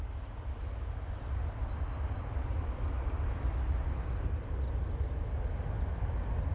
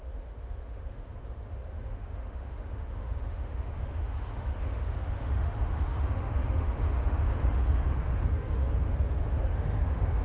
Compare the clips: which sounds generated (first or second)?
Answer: second